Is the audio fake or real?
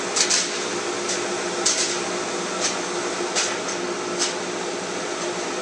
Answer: real